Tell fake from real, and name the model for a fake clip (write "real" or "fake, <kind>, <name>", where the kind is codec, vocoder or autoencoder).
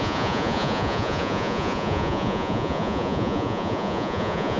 fake, vocoder, Vocos